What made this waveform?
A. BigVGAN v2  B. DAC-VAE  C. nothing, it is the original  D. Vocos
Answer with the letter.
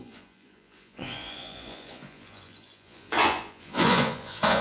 D